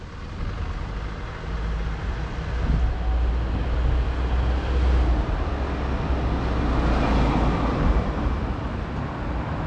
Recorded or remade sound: recorded